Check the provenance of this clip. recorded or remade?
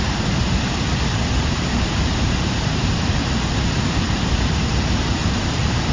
remade